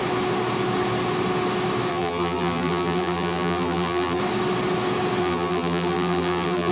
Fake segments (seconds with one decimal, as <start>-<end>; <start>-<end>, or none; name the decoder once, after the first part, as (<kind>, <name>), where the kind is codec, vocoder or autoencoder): 1.9-4.2 (vocoder, BigVGAN v2); 5.2-6.7